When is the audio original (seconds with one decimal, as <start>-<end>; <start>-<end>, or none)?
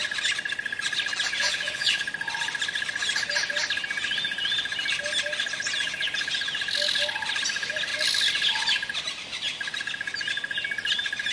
0.0-1.4; 2.0-11.3